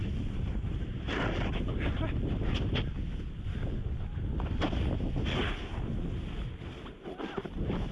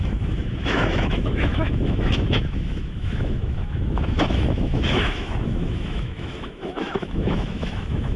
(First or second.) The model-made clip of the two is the second